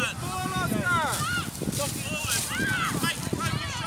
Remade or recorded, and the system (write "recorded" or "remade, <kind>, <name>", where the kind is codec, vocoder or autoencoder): recorded